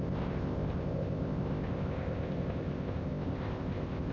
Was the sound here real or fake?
fake